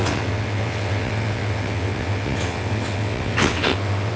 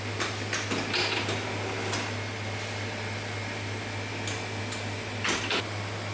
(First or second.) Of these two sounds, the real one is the second